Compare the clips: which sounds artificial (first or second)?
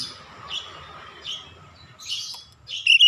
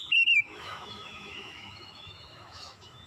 second